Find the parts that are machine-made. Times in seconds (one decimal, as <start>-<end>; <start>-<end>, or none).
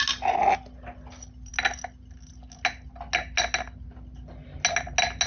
none